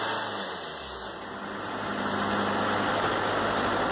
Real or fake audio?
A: real